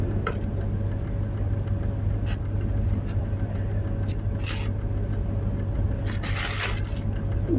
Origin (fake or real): real